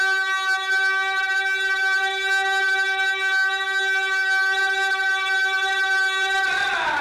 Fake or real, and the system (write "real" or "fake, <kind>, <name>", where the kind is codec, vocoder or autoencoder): real